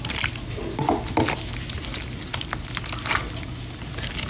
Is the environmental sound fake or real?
real